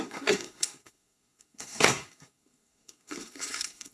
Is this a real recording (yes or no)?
no